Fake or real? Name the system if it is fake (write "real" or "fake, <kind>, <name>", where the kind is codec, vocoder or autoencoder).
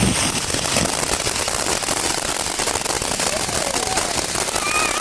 real